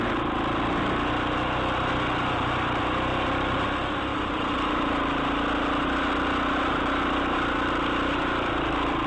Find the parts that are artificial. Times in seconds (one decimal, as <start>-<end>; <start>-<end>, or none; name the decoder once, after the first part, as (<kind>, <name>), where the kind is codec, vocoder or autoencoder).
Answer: 4.1-4.9 (vocoder, BigVGAN v2)